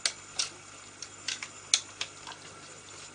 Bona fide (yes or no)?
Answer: yes